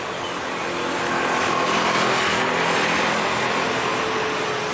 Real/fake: real